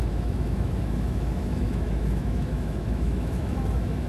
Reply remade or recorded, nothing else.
remade